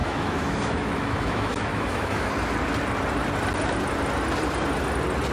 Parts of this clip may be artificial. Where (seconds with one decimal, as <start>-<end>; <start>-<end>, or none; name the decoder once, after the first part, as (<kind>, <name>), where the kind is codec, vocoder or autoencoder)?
0.0-2.3 (autoencoder, DAC-VAE)